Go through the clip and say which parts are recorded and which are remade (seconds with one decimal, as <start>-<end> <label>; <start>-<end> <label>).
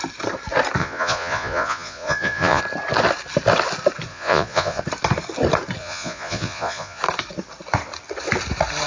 0.0-0.8 recorded; 0.8-2.6 remade; 2.6-4.1 recorded; 4.1-4.8 remade; 4.8-5.8 recorded; 5.8-7.0 remade; 7.0-8.9 recorded